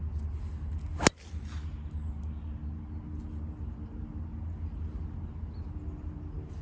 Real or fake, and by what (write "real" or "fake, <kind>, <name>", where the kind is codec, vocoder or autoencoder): real